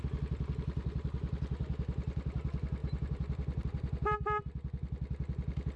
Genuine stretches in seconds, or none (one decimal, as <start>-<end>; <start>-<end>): 0.0-2.8; 4.4-5.8